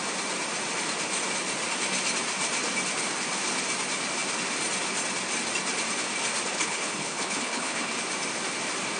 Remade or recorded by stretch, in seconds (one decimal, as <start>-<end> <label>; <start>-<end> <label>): 0.0-6.5 recorded; 6.5-7.9 remade; 7.9-9.0 recorded